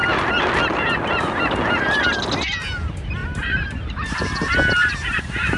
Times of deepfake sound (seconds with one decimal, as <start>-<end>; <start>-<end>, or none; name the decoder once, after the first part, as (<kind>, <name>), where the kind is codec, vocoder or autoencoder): 3.2-5.6 (vocoder, BigVGAN v2)